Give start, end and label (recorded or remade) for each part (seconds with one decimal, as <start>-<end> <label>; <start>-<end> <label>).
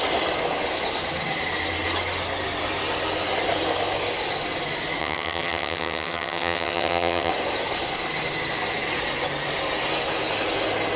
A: 0.0-5.0 recorded; 5.0-7.3 remade; 7.3-11.0 recorded